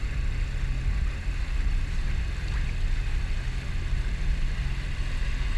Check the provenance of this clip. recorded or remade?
recorded